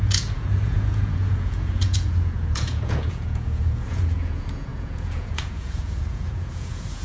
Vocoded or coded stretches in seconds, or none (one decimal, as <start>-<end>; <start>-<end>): 0.0-7.0